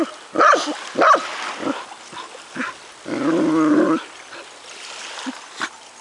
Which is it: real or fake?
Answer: real